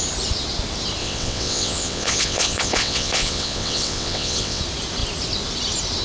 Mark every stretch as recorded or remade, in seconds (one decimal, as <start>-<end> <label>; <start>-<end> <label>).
0.0-1.0 recorded; 1.0-4.6 remade; 4.6-6.0 recorded